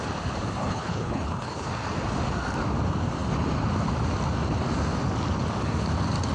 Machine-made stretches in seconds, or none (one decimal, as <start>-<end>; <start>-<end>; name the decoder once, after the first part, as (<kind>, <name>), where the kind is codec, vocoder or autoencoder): 0.6-1.7 (codec, HILCodec)